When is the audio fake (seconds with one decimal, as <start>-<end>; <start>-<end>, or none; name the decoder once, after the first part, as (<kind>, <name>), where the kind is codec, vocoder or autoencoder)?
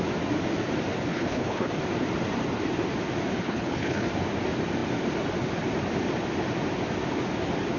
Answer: 1.1-1.7 (codec, HILCodec); 3.4-4.1